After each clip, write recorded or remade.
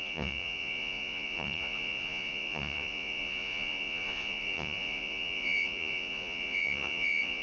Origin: remade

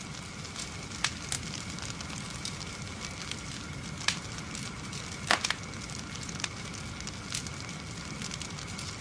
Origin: recorded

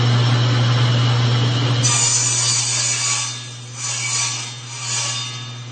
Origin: recorded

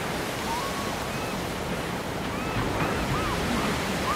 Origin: recorded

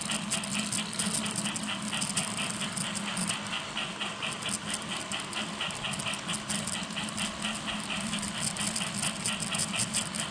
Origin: recorded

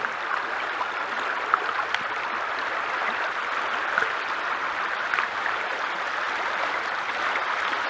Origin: recorded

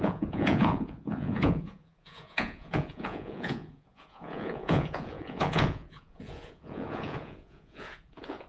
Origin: remade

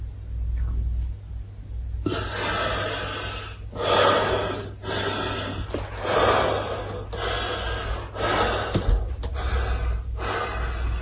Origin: recorded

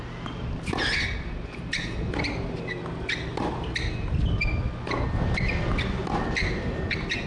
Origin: recorded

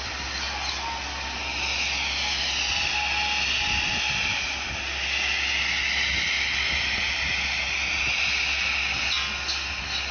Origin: recorded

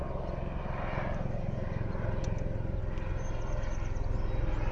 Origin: recorded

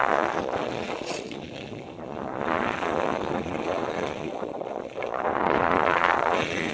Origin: remade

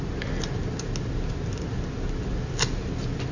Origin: recorded